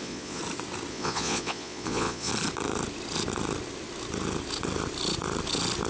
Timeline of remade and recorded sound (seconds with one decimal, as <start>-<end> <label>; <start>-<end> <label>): 0.0-0.4 remade; 0.4-0.9 recorded; 0.9-2.3 remade; 2.3-5.9 recorded